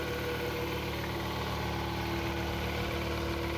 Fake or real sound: real